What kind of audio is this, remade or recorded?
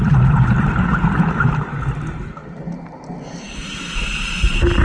recorded